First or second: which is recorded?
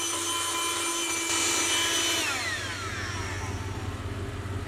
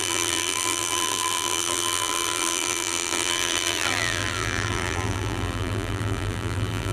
first